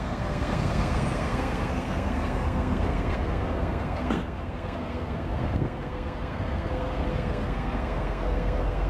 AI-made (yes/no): yes